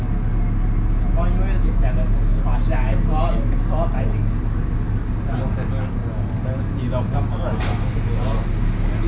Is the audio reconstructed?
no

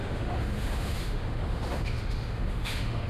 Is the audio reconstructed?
yes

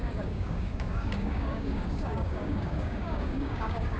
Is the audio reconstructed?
yes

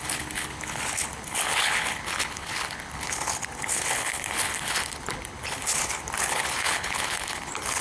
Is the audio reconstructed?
yes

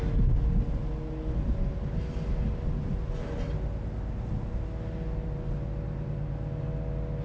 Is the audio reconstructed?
no